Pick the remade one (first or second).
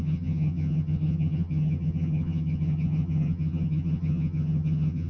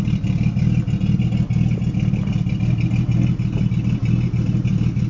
first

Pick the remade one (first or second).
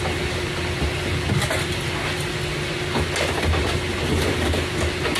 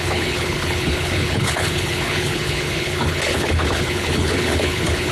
second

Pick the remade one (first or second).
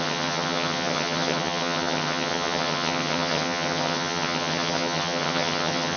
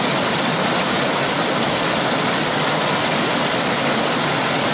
first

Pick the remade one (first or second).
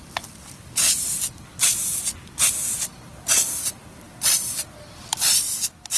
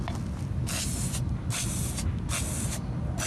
first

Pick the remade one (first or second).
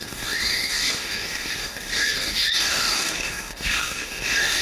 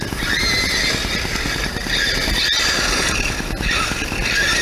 first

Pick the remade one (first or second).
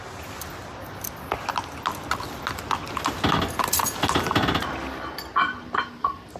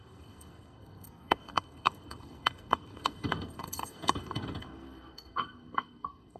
second